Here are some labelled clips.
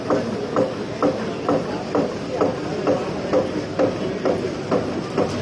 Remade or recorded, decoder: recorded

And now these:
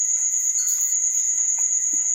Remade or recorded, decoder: remade, vocoder, Vocos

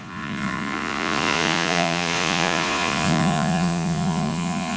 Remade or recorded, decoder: remade, vocoder, Vocos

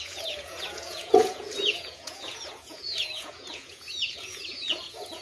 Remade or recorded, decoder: remade, vocoder, Vocos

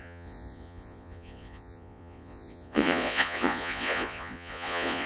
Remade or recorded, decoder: remade, vocoder, Vocos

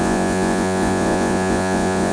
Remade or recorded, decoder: remade, vocoder, Vocos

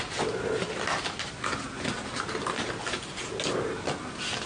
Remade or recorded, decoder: recorded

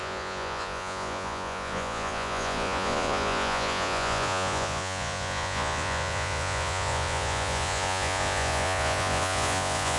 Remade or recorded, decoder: remade, vocoder, Vocos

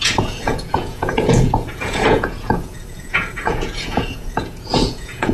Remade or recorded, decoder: remade, vocoder, Vocos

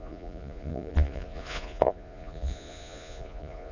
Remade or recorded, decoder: remade, vocoder, Vocos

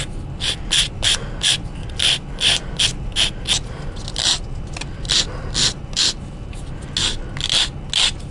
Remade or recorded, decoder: recorded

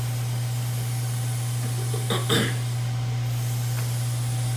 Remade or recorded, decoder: recorded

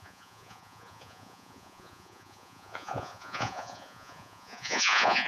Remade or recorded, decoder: remade, vocoder, Vocos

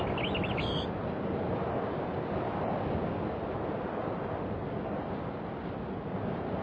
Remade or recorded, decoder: recorded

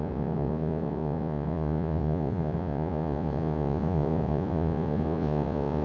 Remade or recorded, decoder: remade, vocoder, Vocos